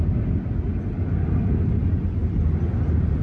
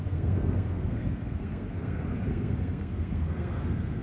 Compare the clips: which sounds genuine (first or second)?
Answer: first